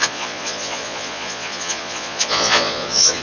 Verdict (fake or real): fake